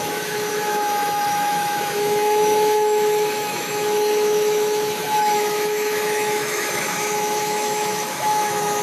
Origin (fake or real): fake